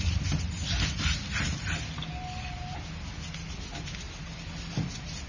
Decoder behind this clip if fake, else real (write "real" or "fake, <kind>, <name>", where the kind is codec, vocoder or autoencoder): real